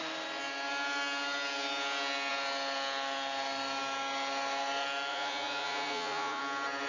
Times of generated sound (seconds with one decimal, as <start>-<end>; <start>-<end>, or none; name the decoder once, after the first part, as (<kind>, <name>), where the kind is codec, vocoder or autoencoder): 5.1-6.4 (vocoder, Vocos)